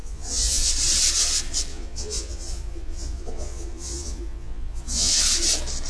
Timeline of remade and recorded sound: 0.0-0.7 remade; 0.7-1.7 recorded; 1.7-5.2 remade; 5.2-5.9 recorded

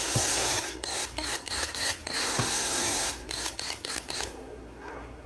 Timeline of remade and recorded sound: 0.0-5.3 remade

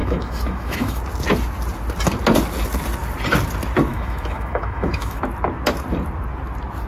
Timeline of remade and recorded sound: 0.0-1.0 remade; 1.0-3.9 recorded; 3.9-5.2 remade; 5.2-6.9 recorded

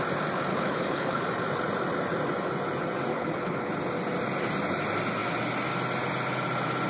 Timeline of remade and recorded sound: 0.0-0.5 recorded; 0.5-1.2 remade; 1.2-3.1 recorded; 3.1-3.7 remade; 3.7-6.9 recorded

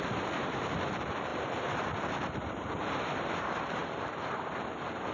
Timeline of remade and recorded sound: 0.0-5.1 remade